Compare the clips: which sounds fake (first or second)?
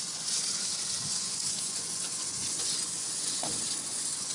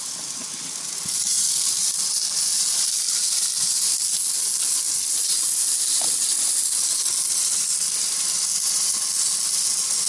first